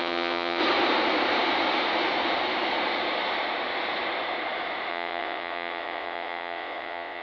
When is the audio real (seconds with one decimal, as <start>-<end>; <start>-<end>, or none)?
0.6-4.9